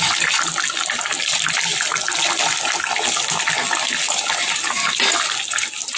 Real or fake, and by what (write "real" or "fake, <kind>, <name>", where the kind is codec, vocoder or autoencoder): real